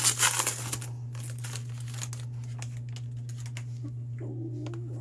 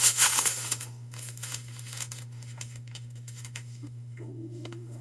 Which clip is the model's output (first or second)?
second